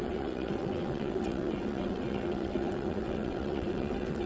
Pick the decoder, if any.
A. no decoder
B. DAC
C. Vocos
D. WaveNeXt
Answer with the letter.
D